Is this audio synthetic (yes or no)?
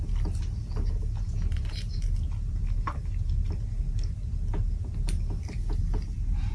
no